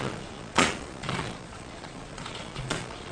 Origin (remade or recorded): remade